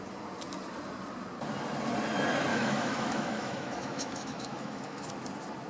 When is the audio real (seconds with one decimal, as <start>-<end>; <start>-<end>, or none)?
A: 0.0-2.5; 5.1-5.7